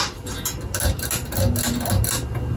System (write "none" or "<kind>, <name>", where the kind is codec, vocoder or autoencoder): none